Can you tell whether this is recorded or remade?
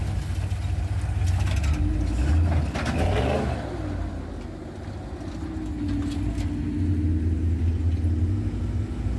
recorded